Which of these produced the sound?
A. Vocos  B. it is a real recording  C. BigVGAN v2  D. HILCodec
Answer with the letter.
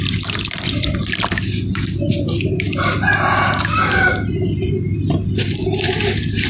B